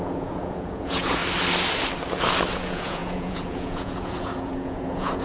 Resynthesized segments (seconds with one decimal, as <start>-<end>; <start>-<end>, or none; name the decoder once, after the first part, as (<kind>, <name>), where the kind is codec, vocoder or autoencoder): 0.0-1.2 (vocoder, Vocos); 2.5-5.2